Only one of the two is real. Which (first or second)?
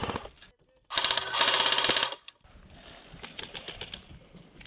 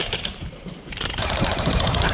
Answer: first